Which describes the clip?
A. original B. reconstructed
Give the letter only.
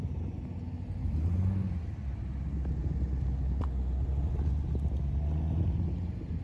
A